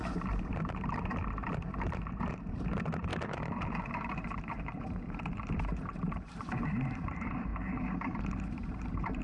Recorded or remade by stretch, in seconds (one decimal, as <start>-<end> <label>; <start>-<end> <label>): 0.0-7.5 remade; 7.5-8.2 recorded; 8.2-9.2 remade